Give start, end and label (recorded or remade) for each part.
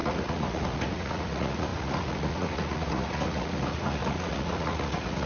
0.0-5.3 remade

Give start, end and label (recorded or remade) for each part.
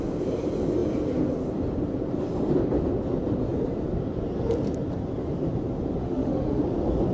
0.0-6.0 recorded; 6.0-6.6 remade; 6.6-7.1 recorded